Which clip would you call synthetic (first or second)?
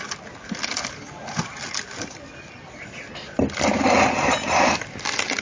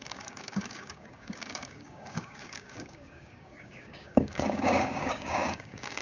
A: second